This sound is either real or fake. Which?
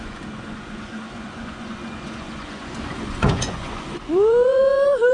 fake